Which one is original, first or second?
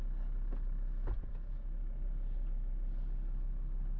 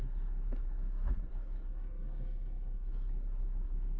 first